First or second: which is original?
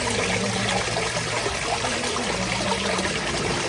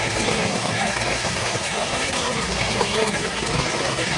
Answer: first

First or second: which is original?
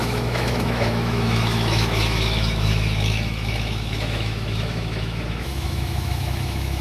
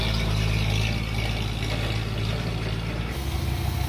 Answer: second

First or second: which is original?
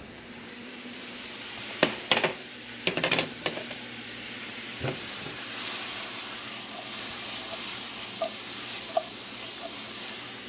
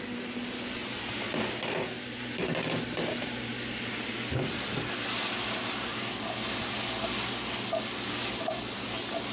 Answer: second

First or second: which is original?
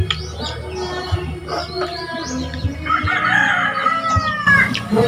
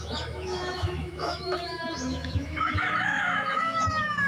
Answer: first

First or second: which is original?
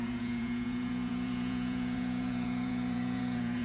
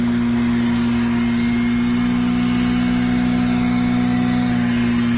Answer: second